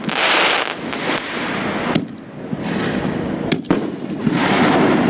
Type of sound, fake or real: real